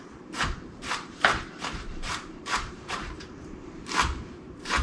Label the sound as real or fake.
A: fake